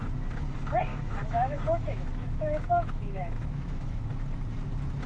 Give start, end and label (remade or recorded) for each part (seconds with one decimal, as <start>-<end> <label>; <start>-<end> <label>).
0.0-0.9 recorded; 0.9-4.0 remade; 4.0-5.1 recorded

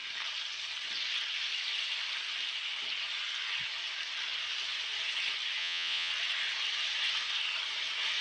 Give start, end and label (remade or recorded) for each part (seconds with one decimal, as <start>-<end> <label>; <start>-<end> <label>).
0.0-5.6 recorded; 5.6-6.1 remade; 6.1-8.2 recorded